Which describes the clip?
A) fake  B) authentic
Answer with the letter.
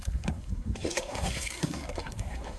A